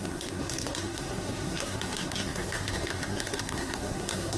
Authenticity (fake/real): fake